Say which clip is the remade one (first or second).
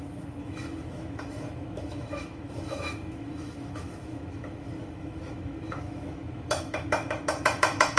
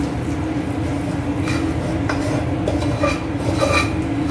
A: first